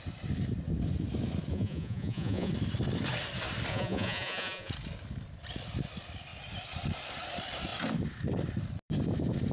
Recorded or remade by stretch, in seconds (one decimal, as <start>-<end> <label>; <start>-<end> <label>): 0.0-1.5 recorded; 1.5-2.5 remade; 2.5-3.7 recorded; 3.7-4.7 remade; 4.7-9.5 recorded